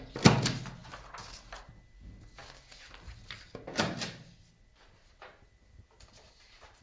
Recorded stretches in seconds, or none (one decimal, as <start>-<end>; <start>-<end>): 0.0-6.8